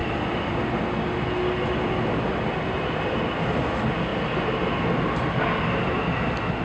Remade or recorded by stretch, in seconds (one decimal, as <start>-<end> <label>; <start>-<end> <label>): 0.0-6.6 recorded

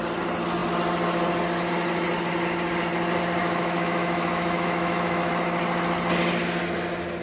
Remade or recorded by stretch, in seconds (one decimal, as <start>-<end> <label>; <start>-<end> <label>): 0.0-3.4 recorded; 3.4-5.3 remade; 5.3-7.2 recorded

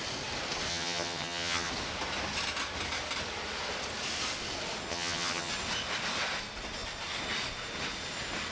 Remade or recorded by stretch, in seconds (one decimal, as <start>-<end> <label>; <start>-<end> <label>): 0.0-0.7 recorded; 0.7-1.7 remade; 1.7-4.9 recorded; 4.9-5.5 remade; 5.5-8.5 recorded